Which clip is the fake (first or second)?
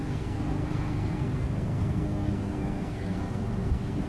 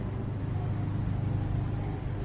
first